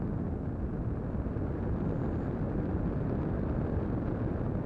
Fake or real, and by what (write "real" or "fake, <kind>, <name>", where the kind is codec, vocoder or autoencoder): real